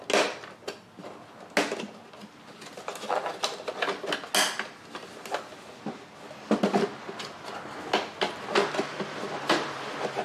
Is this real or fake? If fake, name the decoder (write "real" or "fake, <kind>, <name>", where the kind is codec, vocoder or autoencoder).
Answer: real